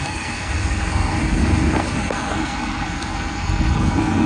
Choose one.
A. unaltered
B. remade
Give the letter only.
B